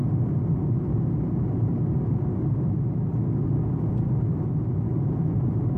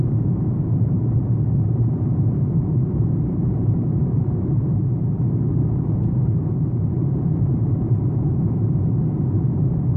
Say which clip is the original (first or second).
first